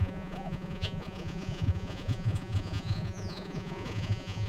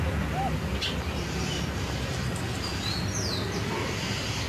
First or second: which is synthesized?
first